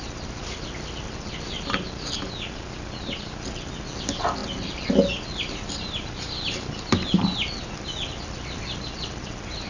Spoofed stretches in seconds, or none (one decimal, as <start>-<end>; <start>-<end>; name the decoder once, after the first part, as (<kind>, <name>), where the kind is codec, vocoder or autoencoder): none